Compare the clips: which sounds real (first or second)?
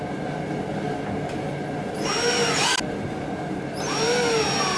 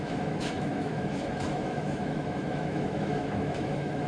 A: first